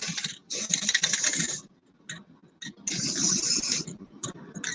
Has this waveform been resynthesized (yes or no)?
no